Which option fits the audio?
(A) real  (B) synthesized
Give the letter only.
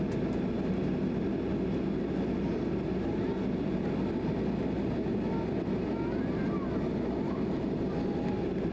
A